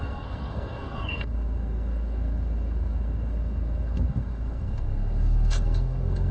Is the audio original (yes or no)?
no